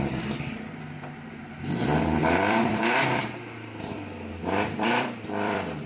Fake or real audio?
fake